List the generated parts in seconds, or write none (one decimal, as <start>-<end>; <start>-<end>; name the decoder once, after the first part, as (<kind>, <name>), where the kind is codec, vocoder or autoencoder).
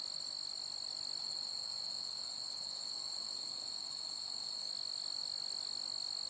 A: 1.2-4.7 (vocoder, Vocos)